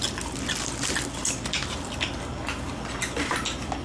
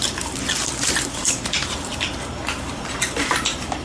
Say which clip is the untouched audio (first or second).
first